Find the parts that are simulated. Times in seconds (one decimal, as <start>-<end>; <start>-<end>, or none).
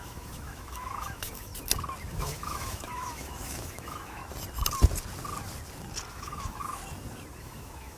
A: 0.0-1.5; 2.1-4.2; 6.1-6.8; 7.4-8.0